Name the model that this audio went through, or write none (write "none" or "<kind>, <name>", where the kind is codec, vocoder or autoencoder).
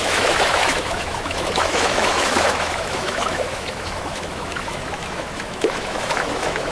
autoencoder, DAC-VAE